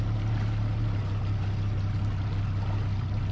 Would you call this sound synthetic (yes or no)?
no